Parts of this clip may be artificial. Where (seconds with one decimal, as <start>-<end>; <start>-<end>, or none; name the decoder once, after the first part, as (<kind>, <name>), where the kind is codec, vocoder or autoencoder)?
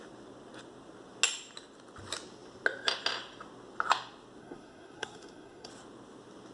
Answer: 4.4-5.7 (codec, SNAC)